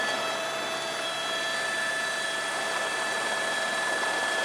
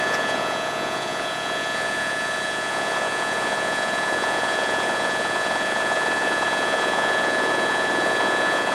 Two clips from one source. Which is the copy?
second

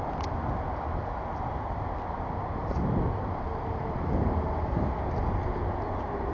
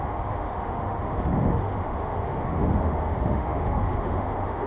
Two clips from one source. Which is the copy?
second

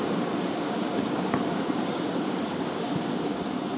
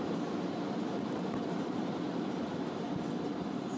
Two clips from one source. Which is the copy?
first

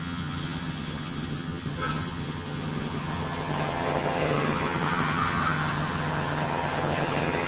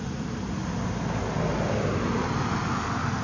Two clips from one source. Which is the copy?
first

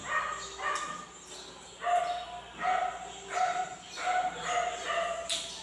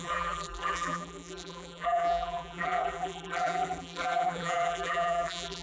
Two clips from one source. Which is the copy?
second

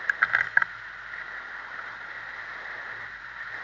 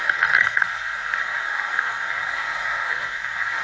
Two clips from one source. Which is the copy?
second